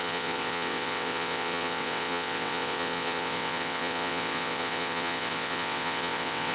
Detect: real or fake fake